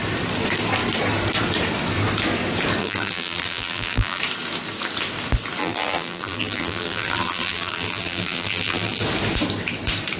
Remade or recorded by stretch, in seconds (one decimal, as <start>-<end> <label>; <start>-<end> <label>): 0.0-2.8 recorded; 2.8-4.2 remade; 4.2-5.6 recorded; 5.6-9.0 remade; 9.0-10.2 recorded